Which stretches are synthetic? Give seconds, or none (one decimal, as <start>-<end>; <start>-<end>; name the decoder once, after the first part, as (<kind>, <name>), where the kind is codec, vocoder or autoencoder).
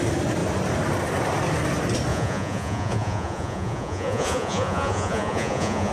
2.1-5.9 (vocoder, Vocos)